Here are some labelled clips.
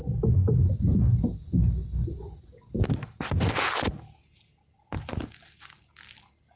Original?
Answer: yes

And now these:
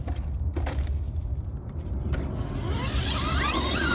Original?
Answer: yes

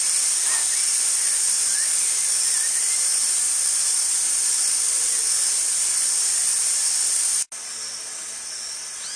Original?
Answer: yes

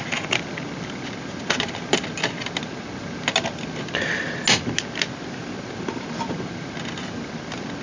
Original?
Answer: yes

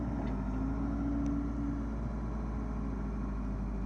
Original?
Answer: yes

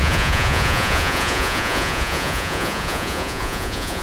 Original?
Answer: no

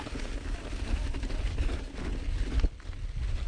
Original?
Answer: yes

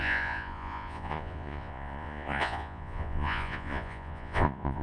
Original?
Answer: no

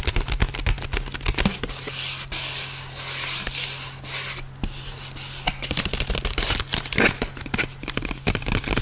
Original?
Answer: yes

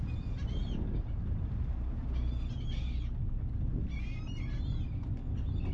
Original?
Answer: yes